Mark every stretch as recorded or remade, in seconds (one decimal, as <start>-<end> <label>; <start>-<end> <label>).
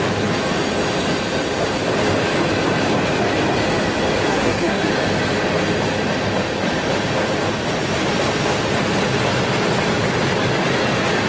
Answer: 0.0-4.3 recorded; 4.3-4.9 remade; 4.9-11.3 recorded